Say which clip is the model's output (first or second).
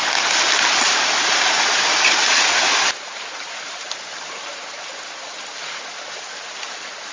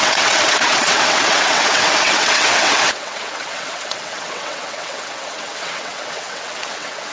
second